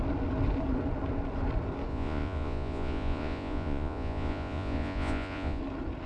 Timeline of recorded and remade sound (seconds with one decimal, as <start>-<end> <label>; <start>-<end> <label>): 0.0-1.9 recorded; 1.9-5.6 remade; 5.6-6.1 recorded